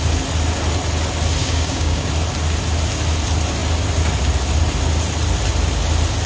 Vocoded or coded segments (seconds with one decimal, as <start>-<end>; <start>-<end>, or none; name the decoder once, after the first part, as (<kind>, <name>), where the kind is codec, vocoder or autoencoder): 1.4-2.1 (codec, DAC)